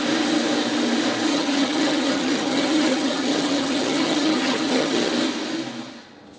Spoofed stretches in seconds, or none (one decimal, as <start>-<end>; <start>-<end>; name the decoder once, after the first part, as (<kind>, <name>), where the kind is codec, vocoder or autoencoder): 1.3-5.1 (vocoder, HiFi-GAN)